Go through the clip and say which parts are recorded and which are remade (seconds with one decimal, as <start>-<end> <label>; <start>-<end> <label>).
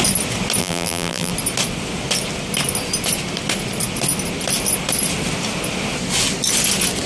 0.0-0.6 recorded; 0.6-1.3 remade; 1.3-7.1 recorded